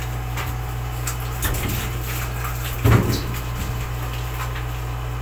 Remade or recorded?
recorded